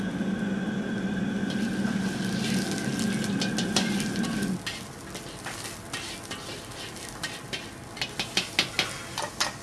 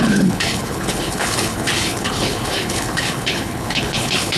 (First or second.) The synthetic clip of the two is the second